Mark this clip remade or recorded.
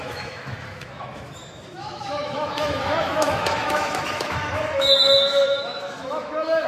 remade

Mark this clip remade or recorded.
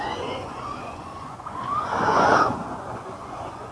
remade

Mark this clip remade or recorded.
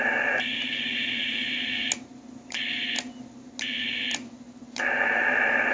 recorded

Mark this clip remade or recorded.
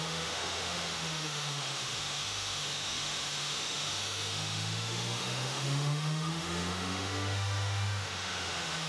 remade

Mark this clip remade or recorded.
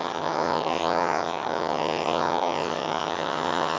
remade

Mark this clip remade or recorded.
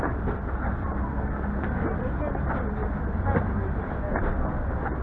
recorded